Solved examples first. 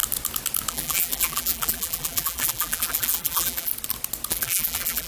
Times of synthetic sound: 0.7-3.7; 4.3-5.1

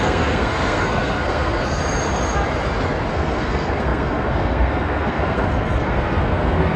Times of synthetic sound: 0.0-1.8; 3.1-6.8

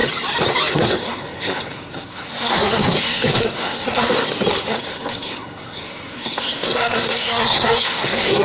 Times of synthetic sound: 0.7-4.1; 4.6-8.4

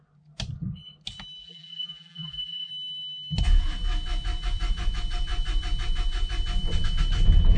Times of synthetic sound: 1.4-2.7

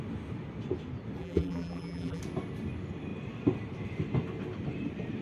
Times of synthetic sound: 1.2-2.2

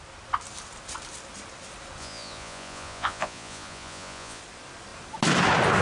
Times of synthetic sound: 2.0-4.4

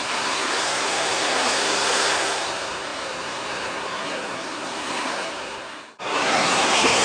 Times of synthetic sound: 0.0-7.0

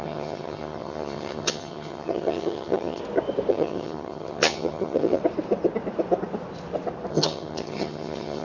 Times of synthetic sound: 0.0-3.0; 3.5-5.2; 7.1-8.4